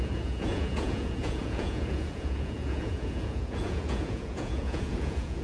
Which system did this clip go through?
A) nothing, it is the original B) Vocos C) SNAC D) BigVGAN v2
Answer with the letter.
B